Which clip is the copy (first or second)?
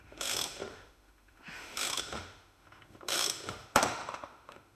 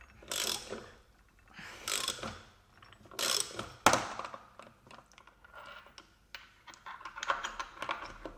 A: first